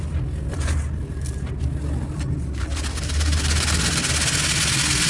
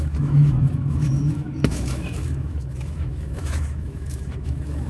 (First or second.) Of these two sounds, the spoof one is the second